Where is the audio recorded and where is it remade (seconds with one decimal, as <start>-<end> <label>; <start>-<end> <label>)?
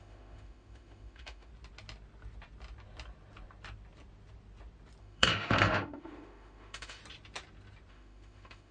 0.0-1.5 remade; 1.5-5.0 recorded; 5.0-7.0 remade; 7.0-7.9 recorded; 7.9-8.7 remade